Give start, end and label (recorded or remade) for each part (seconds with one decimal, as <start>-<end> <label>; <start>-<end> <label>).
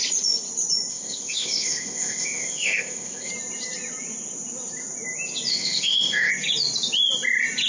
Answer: 0.0-0.9 recorded; 0.9-3.3 remade; 3.3-5.5 recorded; 5.5-6.3 remade; 6.3-7.7 recorded